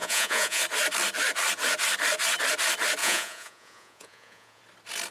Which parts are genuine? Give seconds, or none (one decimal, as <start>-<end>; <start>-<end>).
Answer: 0.6-3.0; 4.6-5.1

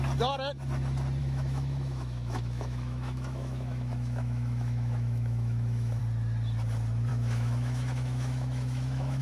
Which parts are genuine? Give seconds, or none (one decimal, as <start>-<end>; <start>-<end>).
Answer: 0.0-1.2; 6.0-7.1